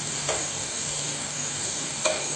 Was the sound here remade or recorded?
remade